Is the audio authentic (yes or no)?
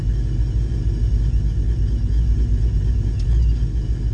yes